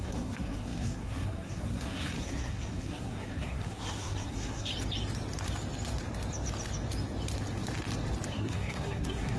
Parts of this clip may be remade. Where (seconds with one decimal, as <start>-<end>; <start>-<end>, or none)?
0.0-4.7; 8.3-9.4